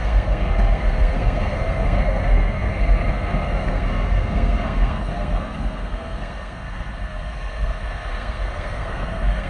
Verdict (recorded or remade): remade